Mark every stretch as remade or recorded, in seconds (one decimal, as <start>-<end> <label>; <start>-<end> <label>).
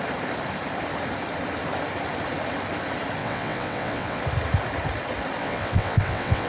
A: 0.0-3.2 recorded; 3.2-4.2 remade; 4.2-5.4 recorded; 5.4-6.5 remade